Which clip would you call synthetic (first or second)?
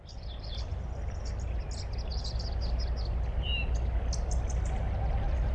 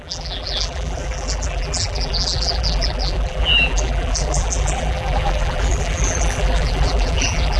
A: second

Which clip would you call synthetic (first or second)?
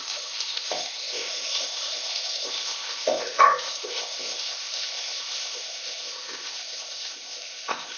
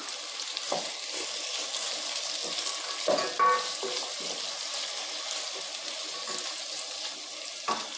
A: first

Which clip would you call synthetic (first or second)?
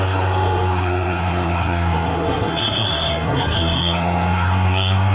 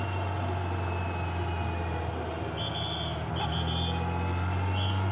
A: first